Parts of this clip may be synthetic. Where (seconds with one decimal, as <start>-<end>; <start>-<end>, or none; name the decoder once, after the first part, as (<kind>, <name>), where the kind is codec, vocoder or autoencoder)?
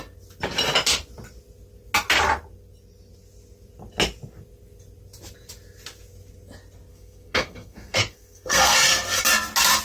6.9-9.2 (codec, SNAC)